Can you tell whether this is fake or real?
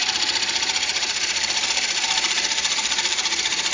fake